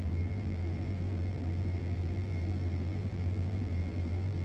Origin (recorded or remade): remade